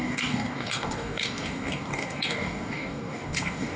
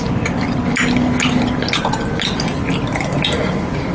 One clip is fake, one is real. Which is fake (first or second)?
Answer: first